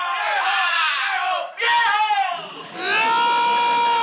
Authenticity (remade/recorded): recorded